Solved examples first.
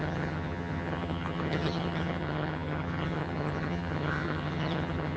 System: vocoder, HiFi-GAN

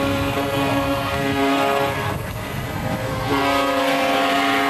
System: codec, SNAC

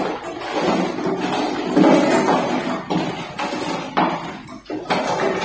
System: none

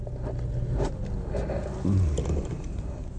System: none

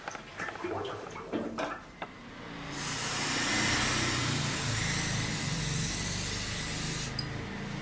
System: none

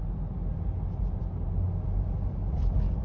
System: none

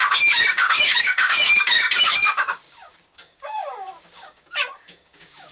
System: codec, DAC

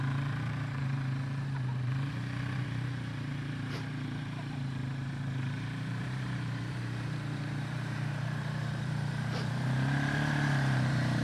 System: vocoder, BigVGAN v2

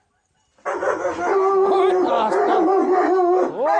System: none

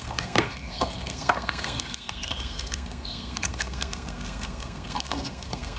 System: codec, SNAC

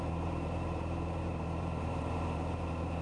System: vocoder, BigVGAN v2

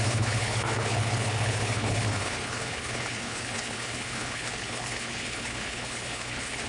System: codec, HILCodec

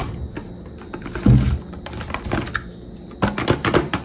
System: none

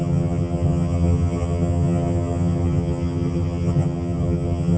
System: vocoder, HiFi-GAN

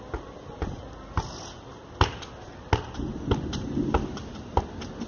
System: none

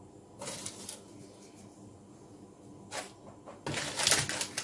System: none